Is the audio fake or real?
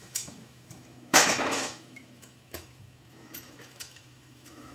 fake